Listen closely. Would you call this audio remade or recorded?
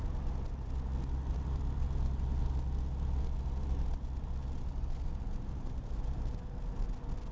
recorded